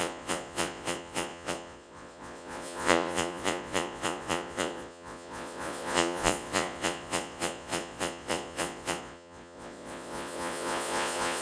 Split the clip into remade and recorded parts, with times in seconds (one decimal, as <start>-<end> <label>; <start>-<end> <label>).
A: 0.0-11.4 remade